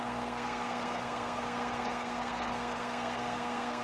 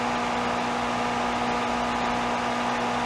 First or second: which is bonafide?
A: second